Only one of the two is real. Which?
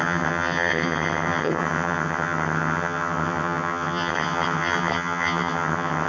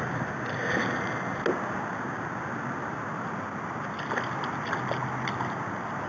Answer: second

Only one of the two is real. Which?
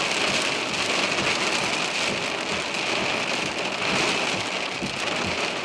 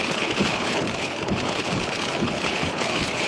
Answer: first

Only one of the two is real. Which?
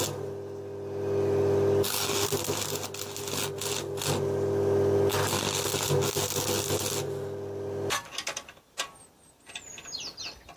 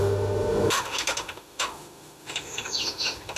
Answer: first